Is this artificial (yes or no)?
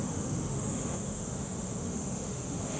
yes